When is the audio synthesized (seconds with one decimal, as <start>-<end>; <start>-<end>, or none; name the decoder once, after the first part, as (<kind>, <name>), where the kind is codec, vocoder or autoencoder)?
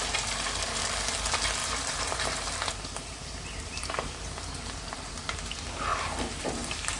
1.6-5.1 (vocoder, BigVGAN v2); 5.9-7.0